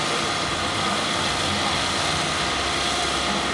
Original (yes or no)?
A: yes